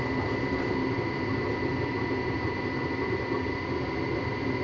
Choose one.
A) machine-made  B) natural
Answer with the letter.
B